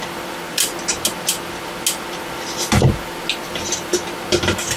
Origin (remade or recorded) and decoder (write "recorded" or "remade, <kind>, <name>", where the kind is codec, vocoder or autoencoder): recorded